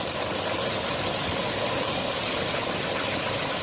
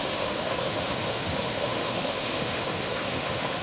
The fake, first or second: second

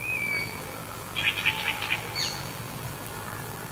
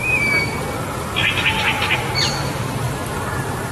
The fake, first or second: first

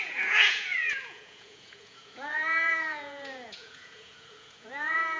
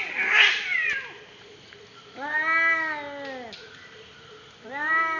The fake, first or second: first